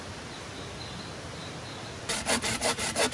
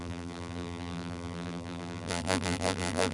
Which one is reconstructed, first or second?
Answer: second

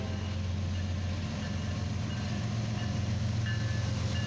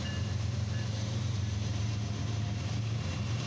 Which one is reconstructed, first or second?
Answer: second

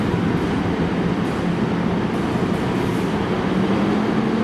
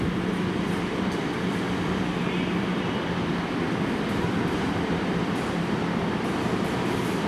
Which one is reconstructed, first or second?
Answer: second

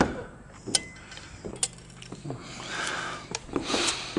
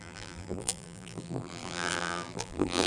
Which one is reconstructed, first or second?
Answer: second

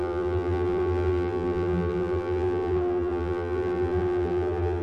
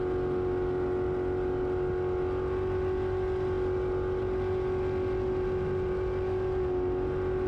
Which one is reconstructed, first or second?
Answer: first